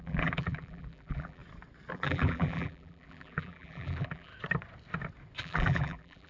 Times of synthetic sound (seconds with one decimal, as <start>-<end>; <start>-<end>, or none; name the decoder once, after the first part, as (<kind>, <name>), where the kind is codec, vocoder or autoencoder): 0.0-1.4 (vocoder, BigVGAN v2); 1.9-4.3; 5.4-6.3